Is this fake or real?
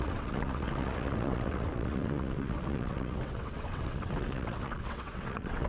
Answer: fake